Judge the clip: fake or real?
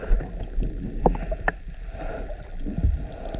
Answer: real